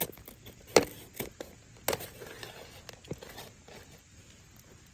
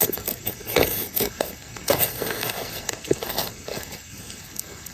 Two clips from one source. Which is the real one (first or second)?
first